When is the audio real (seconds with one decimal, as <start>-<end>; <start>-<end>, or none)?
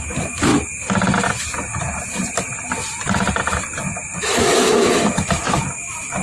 0.5-4.2